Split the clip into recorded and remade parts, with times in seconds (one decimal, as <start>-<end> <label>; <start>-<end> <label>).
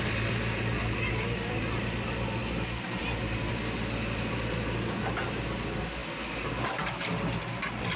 0.0-8.0 recorded